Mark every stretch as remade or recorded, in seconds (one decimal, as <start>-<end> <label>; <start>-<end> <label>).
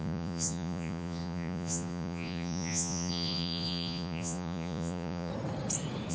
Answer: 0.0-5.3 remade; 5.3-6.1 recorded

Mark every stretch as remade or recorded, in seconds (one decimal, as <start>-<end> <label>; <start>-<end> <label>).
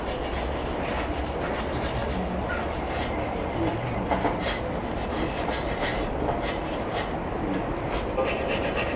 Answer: 0.0-9.0 recorded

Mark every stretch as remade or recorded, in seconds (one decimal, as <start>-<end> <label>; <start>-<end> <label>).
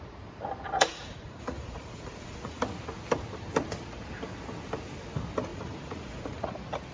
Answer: 0.0-0.9 recorded; 0.9-2.6 remade; 2.6-5.5 recorded; 5.5-6.5 remade; 6.5-6.9 recorded